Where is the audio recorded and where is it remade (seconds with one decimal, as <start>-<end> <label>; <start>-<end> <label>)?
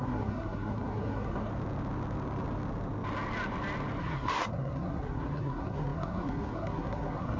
0.0-1.5 remade; 1.5-4.0 recorded; 4.0-7.4 remade